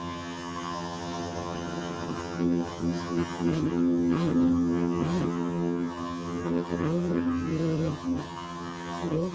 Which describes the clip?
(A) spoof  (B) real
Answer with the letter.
A